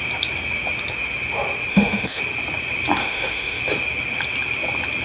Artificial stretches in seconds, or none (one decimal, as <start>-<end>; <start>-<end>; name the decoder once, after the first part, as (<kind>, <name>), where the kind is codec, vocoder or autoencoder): 1.7-2.2 (autoencoder, DAC-VAE); 3.0-3.6